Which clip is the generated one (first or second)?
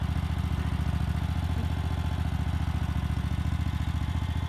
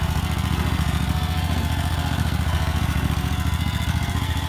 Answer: second